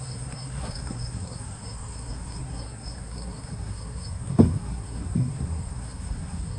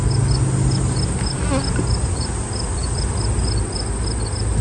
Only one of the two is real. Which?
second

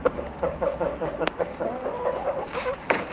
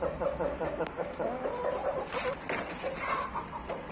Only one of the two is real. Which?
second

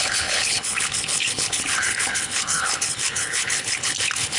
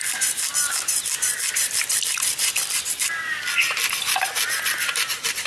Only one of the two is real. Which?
second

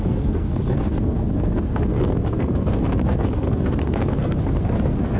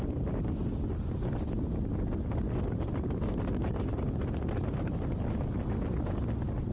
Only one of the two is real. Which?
second